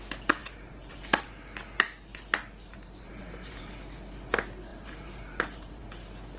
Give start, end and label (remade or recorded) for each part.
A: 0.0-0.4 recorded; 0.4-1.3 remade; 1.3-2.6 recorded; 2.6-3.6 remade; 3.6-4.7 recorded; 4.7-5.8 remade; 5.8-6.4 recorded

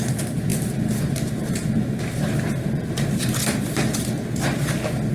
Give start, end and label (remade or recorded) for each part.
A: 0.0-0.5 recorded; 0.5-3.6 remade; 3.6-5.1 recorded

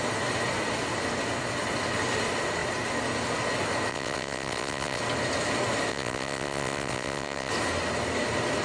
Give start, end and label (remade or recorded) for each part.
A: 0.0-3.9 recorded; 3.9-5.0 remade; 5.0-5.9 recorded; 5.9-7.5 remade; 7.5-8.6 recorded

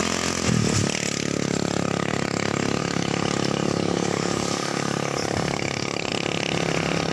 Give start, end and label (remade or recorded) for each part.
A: 0.0-2.8 recorded; 2.8-6.1 remade; 6.1-7.1 recorded

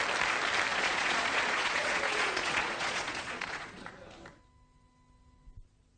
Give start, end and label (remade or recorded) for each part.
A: 0.0-0.7 recorded; 0.7-3.9 remade; 3.9-6.0 recorded

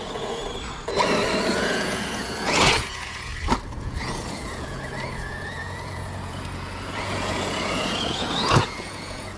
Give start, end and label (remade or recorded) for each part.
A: 0.0-0.4 remade; 0.4-1.5 recorded; 1.5-3.3 remade; 3.3-3.8 recorded; 3.8-9.4 remade

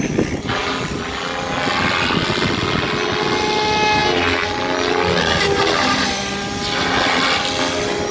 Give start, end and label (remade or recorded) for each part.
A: 0.0-8.1 recorded

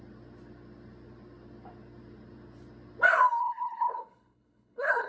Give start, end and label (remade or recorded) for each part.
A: 0.0-3.4 recorded; 3.4-5.1 remade